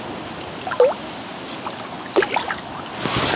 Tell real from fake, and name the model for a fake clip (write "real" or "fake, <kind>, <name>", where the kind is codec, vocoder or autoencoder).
real